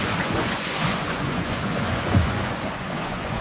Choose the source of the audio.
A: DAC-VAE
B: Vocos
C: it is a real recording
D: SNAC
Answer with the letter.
B